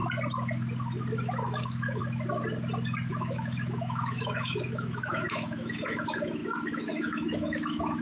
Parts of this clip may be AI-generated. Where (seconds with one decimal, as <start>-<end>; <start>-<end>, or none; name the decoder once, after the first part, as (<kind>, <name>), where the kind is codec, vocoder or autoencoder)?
1.2-2.0 (autoencoder, DAC-VAE); 3.1-8.0